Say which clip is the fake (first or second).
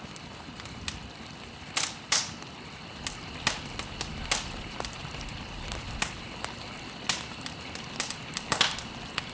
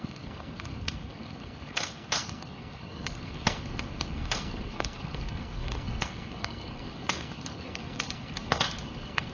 second